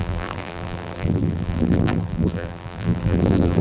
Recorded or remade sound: remade